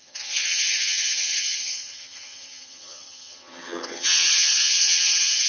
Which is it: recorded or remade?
remade